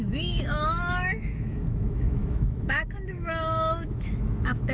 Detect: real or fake fake